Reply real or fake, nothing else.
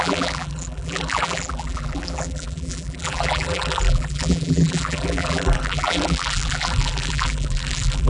fake